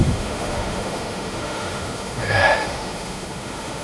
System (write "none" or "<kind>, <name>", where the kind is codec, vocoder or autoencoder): autoencoder, DAC-VAE